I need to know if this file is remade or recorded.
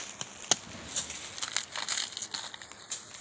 recorded